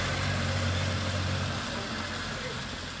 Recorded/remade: recorded